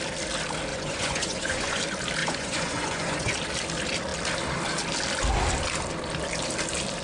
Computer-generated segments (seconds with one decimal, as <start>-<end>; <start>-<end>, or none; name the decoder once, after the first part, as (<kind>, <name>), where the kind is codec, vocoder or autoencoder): 0.7-1.8 (vocoder, Vocos); 2.2-3.3